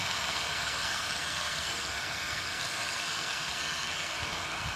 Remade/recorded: remade